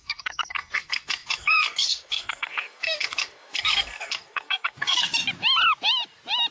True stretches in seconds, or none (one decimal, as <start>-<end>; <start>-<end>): 5.1-6.5